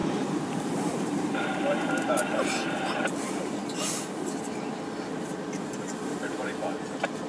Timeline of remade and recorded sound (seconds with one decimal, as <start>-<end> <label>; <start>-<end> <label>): 0.0-4.4 remade; 4.4-5.1 recorded; 5.1-6.3 remade; 6.3-7.3 recorded